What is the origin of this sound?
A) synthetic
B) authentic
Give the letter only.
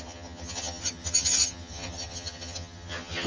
A